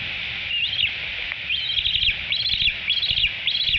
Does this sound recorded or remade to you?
recorded